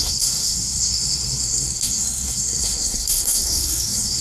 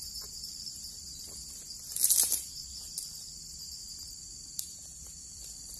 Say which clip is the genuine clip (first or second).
second